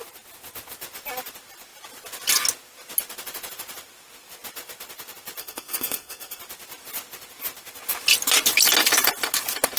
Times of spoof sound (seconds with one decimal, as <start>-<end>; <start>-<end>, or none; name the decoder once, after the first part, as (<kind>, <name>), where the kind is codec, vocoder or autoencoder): 5.4-6.4 (codec, SNAC)